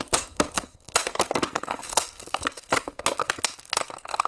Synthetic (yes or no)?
yes